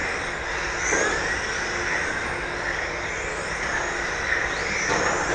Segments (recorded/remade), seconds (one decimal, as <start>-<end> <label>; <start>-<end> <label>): 0.0-5.3 recorded